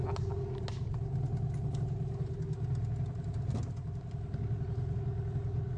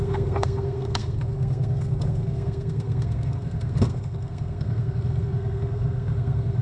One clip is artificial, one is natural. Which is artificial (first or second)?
second